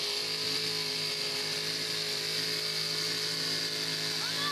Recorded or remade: recorded